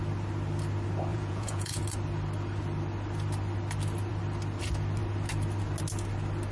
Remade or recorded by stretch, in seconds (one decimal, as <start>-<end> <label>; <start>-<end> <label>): 0.0-1.1 recorded; 1.1-1.8 remade; 1.8-6.5 recorded